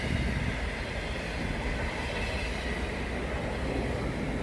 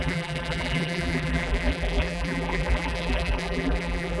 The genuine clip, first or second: first